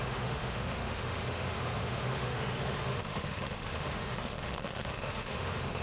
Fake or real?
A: fake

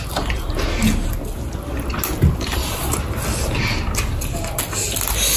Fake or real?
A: real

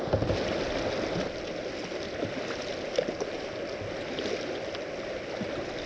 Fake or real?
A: real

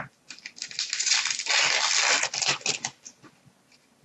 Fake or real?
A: real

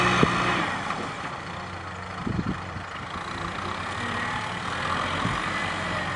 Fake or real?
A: real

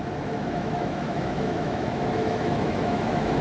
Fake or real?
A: fake